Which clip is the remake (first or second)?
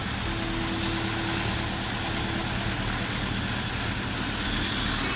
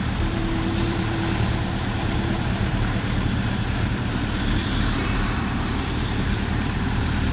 second